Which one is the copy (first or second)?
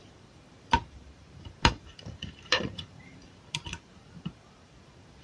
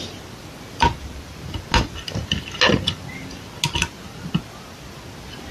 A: first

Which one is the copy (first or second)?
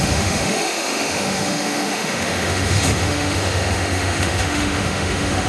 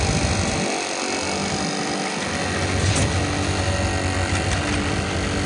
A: first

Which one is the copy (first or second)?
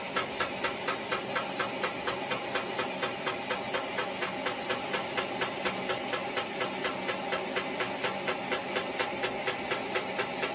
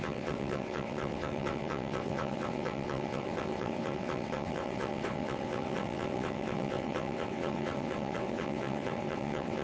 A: second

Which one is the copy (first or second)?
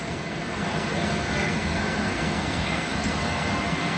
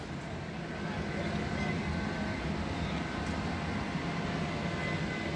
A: first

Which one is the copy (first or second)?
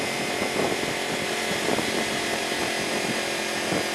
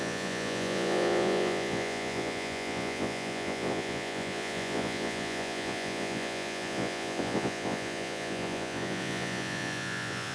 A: second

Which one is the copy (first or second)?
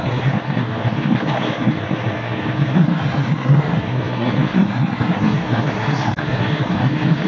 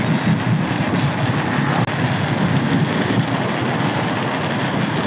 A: first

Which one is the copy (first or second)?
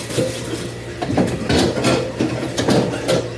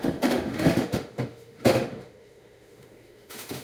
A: second